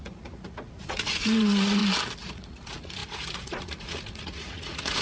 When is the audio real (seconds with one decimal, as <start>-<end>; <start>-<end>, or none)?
1.8-2.3